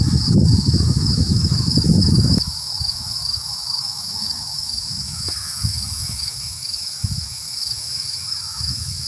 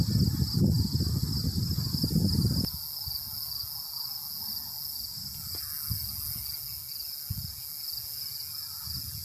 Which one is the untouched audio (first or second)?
second